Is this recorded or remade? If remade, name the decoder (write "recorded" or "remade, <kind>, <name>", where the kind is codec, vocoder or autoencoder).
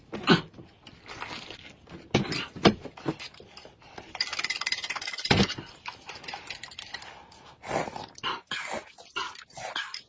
recorded